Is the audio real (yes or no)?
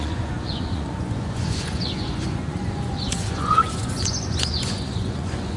no